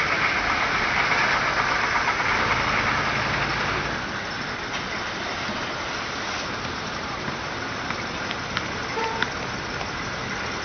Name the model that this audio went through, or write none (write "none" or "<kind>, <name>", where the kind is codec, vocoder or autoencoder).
none